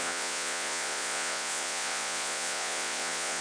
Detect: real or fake fake